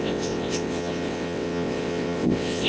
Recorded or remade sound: remade